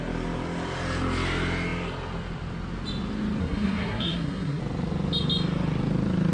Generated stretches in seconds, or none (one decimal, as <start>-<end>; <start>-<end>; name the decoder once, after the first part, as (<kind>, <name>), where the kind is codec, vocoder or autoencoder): 3.4-4.6 (codec, SNAC)